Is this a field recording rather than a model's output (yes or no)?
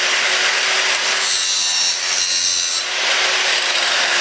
yes